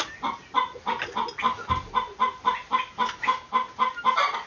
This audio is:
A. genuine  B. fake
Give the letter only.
A